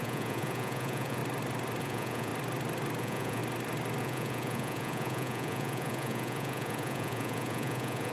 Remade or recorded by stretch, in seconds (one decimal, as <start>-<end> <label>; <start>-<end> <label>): 0.0-1.2 remade; 1.2-1.8 recorded; 1.8-2.3 remade; 2.3-3.0 recorded; 3.0-3.4 remade; 3.4-4.0 recorded; 4.0-8.1 remade

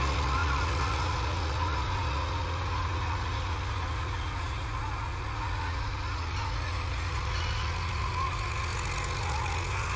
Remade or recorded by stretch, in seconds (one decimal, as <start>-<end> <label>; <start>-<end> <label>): 0.0-10.0 remade

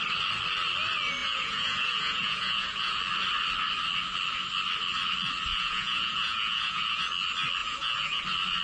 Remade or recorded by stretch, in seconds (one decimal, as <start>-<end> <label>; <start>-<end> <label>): 0.0-1.2 recorded; 1.2-3.0 remade; 3.0-5.5 recorded; 5.5-7.0 remade; 7.0-7.6 recorded; 7.6-8.2 remade; 8.2-8.6 recorded